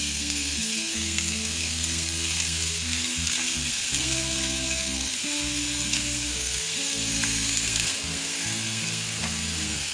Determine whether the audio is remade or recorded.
remade